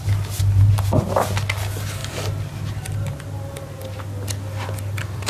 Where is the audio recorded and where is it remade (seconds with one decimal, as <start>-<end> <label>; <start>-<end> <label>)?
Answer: 0.0-5.3 recorded

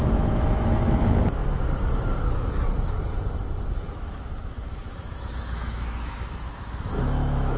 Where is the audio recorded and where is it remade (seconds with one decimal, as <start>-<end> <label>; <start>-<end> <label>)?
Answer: 0.0-1.4 remade; 1.4-3.9 recorded; 3.9-7.6 remade

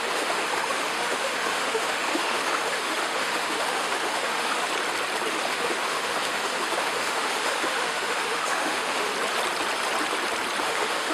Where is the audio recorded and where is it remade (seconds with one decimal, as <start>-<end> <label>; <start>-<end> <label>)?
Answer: 0.0-4.7 remade; 4.7-5.3 recorded; 5.3-9.1 remade; 9.1-10.6 recorded; 10.6-11.1 remade

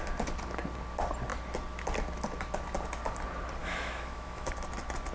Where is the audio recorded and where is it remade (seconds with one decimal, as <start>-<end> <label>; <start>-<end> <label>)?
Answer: 0.0-3.6 recorded; 3.6-4.5 remade; 4.5-5.1 recorded

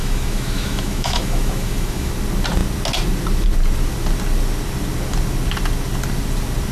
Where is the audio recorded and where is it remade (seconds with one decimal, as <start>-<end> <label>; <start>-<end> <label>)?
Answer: 0.0-2.1 remade; 2.1-6.7 recorded